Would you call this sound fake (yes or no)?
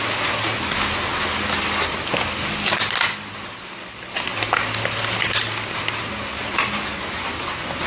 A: no